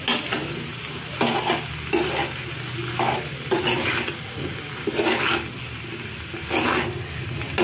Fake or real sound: real